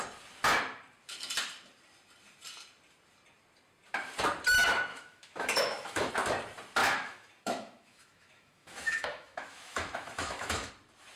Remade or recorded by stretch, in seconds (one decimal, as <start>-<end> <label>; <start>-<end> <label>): 0.0-4.9 recorded; 4.9-6.1 remade; 6.1-6.8 recorded; 6.8-10.7 remade; 10.7-11.2 recorded